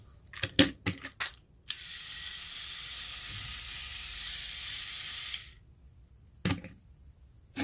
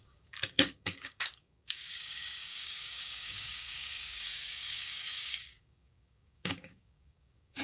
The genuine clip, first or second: first